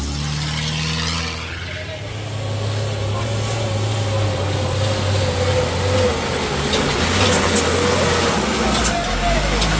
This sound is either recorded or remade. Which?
recorded